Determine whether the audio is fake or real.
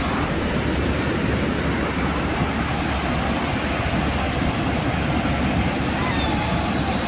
real